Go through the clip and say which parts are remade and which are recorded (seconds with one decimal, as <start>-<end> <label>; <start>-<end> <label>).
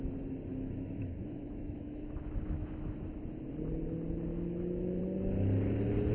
0.0-0.5 recorded; 0.5-3.2 remade; 3.2-4.3 recorded; 4.3-5.0 remade; 5.0-6.1 recorded